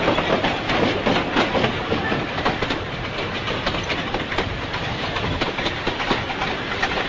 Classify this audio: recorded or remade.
recorded